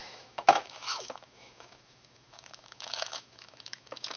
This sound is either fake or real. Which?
fake